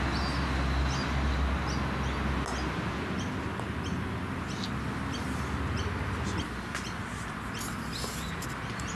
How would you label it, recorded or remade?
recorded